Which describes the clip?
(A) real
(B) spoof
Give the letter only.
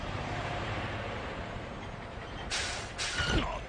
B